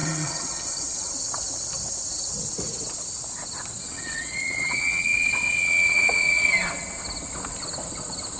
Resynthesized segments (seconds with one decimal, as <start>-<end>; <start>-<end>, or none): 0.0-1.1; 3.8-6.5